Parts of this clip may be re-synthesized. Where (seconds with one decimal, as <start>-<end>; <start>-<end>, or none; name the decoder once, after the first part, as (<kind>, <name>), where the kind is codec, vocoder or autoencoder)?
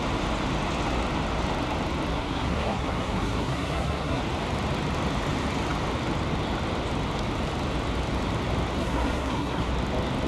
2.1-4.2 (codec, SNAC); 8.8-9.7